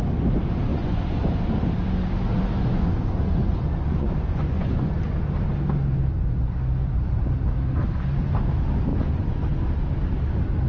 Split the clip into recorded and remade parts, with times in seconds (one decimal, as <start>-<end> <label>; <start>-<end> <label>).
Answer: 0.0-0.7 recorded; 0.7-1.2 remade; 1.2-2.6 recorded; 2.6-5.0 remade; 5.0-8.9 recorded; 8.9-9.4 remade; 9.4-10.7 recorded